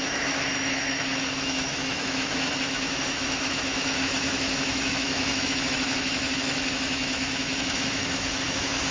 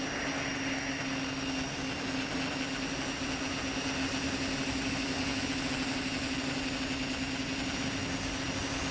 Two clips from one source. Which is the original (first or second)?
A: second